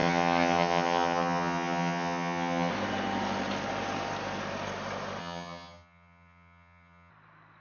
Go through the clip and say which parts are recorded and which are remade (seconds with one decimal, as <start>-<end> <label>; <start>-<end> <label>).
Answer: 0.0-2.7 remade; 2.7-5.2 recorded; 5.2-7.1 remade; 7.1-7.6 recorded

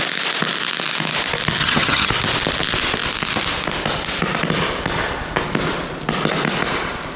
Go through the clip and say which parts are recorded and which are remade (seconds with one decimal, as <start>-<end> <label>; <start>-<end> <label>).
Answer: 0.0-1.6 recorded; 1.6-2.1 remade; 2.1-7.2 recorded

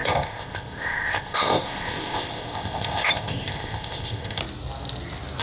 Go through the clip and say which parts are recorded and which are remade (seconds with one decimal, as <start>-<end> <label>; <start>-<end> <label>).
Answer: 0.0-4.4 remade; 4.4-5.4 recorded

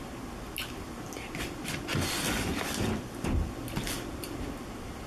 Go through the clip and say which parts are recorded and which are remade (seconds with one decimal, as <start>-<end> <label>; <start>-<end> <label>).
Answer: 0.0-2.5 recorded; 2.5-4.0 remade; 4.0-5.1 recorded

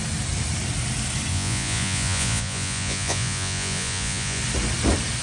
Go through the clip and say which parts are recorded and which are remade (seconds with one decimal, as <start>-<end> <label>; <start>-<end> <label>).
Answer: 0.0-1.3 recorded; 1.3-4.4 remade; 4.4-5.2 recorded